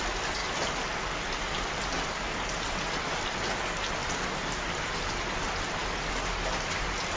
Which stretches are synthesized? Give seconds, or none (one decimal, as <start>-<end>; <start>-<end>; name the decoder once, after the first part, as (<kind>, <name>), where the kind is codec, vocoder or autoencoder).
4.0-5.1 (vocoder, BigVGAN v2)